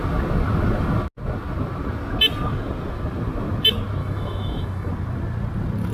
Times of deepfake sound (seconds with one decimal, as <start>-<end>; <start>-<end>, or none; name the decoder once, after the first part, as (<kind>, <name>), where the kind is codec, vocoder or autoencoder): 4.0-4.9 (autoencoder, DAC-VAE)

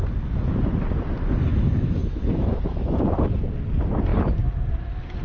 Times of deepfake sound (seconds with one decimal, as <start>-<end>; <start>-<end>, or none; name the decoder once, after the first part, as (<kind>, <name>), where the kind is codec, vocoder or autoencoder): 1.5-3.0 (autoencoder, DAC-VAE)

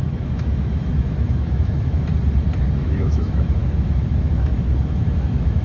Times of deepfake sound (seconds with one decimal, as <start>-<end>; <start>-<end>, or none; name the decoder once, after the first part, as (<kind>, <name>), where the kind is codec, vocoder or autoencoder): 0.0-2.1 (autoencoder, DAC-VAE); 2.7-5.6

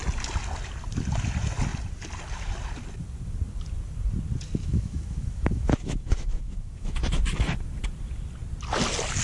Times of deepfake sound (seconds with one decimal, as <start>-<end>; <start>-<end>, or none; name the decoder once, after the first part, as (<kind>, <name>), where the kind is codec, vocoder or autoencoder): 4.6-7.0 (autoencoder, DAC-VAE)

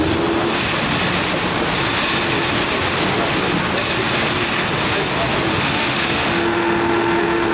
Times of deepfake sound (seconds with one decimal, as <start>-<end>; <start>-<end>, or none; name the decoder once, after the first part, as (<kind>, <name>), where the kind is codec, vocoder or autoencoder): 5.5-7.5 (autoencoder, DAC-VAE)